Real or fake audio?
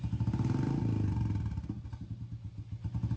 real